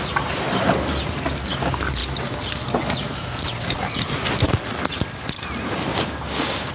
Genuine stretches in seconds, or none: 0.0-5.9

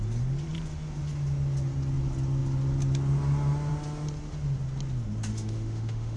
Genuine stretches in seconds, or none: 0.0-5.3